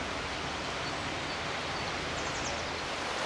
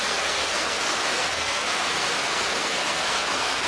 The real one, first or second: first